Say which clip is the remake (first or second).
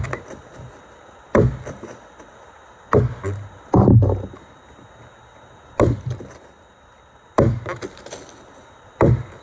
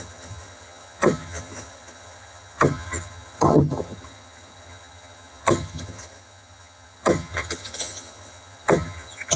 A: second